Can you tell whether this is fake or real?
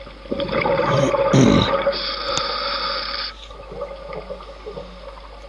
real